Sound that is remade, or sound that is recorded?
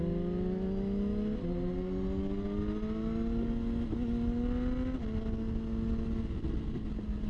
recorded